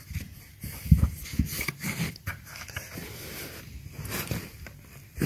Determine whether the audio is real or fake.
real